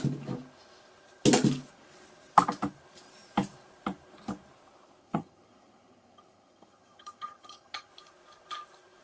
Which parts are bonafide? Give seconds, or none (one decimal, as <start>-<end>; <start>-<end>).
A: 0.0-5.0; 7.9-9.0